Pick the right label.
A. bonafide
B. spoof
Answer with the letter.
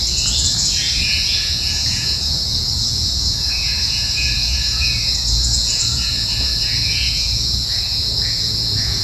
B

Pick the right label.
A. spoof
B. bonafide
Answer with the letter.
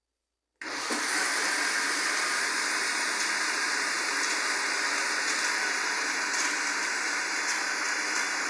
B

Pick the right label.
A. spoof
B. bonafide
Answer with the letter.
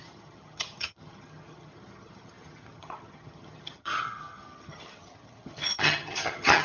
A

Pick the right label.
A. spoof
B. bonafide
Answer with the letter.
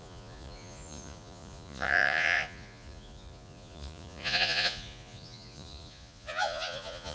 A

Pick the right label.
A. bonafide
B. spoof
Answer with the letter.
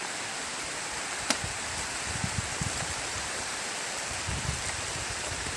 B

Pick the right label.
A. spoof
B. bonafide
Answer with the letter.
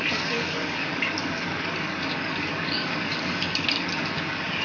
A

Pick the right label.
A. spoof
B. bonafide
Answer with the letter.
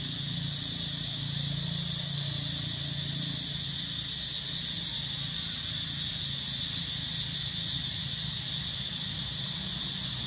B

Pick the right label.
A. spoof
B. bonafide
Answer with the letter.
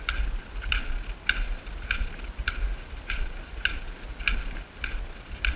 B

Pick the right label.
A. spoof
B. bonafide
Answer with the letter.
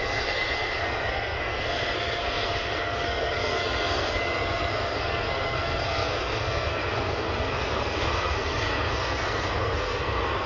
A